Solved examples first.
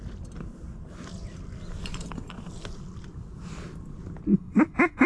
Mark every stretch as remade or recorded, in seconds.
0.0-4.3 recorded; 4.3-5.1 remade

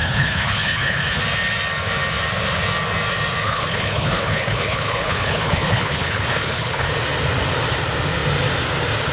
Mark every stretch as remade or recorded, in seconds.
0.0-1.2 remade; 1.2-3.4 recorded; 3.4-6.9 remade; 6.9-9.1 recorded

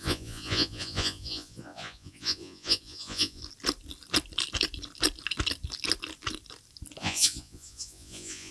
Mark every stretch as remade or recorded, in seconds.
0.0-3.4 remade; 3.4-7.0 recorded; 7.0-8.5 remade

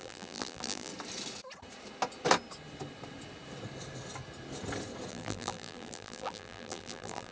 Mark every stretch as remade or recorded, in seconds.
0.0-0.9 remade; 0.9-5.1 recorded; 5.1-7.3 remade